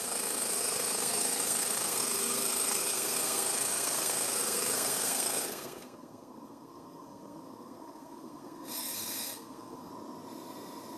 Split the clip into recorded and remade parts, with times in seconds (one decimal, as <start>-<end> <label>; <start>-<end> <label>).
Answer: 0.0-9.9 remade; 9.9-11.0 recorded

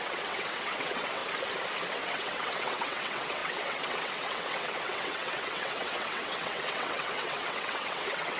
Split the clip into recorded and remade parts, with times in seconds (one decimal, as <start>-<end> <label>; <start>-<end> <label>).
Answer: 0.0-1.2 remade; 1.2-1.9 recorded; 1.9-8.4 remade

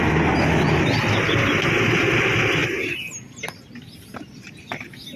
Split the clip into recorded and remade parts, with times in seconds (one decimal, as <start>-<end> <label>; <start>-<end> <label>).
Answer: 0.0-5.2 recorded

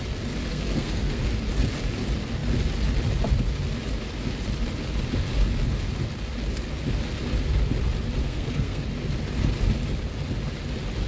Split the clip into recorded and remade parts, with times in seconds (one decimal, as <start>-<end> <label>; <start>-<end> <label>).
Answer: 0.0-0.5 recorded; 0.5-1.2 remade; 1.2-8.2 recorded; 8.2-8.8 remade; 8.8-11.1 recorded